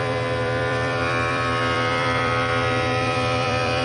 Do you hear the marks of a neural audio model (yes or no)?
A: yes